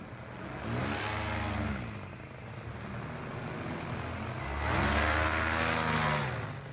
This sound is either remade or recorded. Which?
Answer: recorded